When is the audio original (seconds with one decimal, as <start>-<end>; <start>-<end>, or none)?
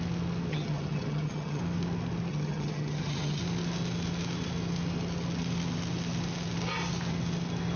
0.0-0.5; 1.6-2.3; 3.4-7.8